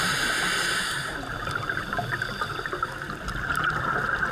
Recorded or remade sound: recorded